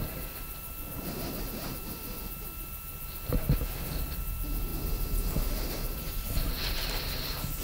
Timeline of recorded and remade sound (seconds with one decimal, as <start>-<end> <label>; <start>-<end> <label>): 0.0-7.6 recorded